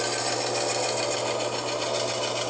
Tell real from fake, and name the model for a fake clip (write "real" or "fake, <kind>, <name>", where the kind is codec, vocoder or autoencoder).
real